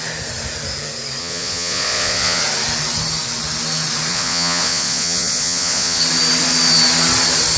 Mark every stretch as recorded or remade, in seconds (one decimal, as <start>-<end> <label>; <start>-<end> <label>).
0.0-1.2 recorded; 1.2-2.4 remade; 2.4-4.1 recorded; 4.1-6.0 remade; 6.0-7.6 recorded